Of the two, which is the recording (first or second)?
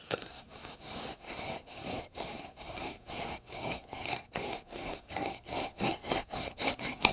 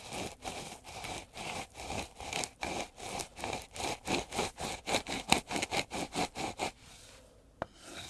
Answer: second